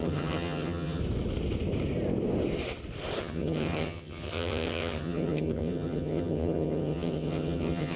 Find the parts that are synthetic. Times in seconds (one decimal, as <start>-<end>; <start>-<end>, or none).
0.0-1.0; 3.2-8.0